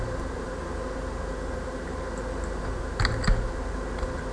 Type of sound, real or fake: real